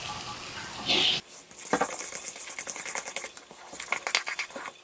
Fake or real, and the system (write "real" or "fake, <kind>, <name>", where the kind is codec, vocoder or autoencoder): real